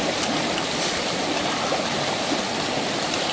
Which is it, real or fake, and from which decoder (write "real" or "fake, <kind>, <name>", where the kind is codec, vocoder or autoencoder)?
real